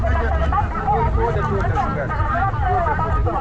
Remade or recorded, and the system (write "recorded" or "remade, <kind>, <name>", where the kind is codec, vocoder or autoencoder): recorded